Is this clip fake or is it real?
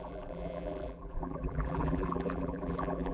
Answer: fake